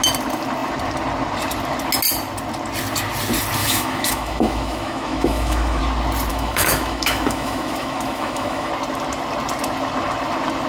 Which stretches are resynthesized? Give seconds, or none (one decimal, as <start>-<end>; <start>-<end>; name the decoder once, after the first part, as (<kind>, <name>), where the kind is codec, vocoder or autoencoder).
3.6-5.8 (autoencoder, DAC-VAE); 6.3-8.7